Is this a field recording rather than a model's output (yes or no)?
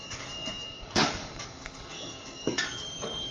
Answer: no